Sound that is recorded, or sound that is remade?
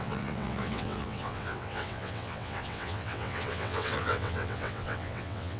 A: remade